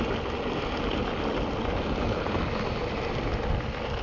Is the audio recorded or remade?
recorded